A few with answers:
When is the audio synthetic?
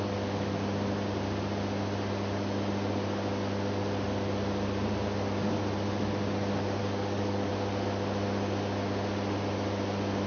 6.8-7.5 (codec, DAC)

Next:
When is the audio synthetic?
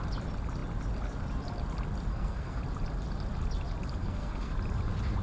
2.1-2.6 (codec, SNAC); 4.0-4.5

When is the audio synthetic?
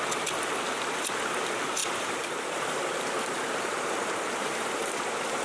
1.8-2.8 (vocoder, BigVGAN v2)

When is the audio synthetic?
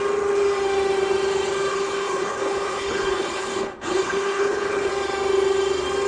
1.7-4.9 (codec, HILCodec)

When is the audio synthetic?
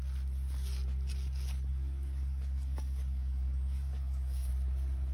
1.7-4.5 (codec, DAC)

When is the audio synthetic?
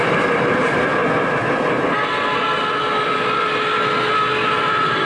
0.0-1.0 (vocoder, BigVGAN v2); 4.1-5.1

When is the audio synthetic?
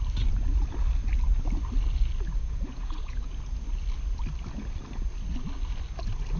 2.4-3.3 (vocoder, Vocos)